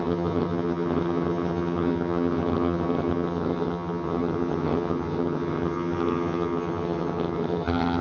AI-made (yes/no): yes